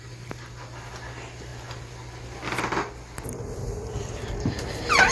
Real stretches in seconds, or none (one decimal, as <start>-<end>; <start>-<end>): 0.0-5.1

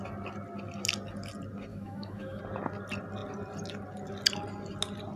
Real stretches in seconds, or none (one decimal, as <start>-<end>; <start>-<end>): 0.0-1.7; 2.4-5.2

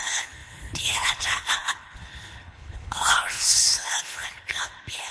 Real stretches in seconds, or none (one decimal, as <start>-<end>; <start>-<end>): none